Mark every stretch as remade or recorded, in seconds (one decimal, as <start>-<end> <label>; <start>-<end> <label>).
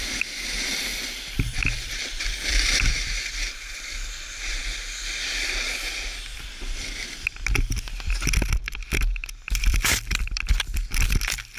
0.0-4.6 remade; 4.6-5.2 recorded; 5.2-11.6 remade